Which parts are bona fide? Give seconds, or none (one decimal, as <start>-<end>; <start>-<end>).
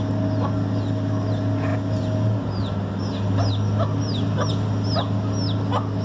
0.0-6.0